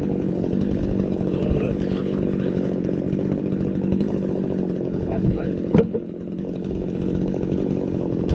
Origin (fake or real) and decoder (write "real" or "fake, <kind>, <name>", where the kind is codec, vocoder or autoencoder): fake, codec, HILCodec